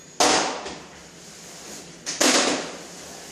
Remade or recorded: recorded